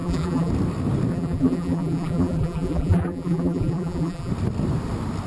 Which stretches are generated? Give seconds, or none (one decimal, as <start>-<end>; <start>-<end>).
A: 0.0-0.5; 1.1-4.3